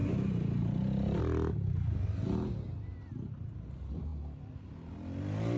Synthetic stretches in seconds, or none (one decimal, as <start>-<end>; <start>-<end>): 0.0-1.2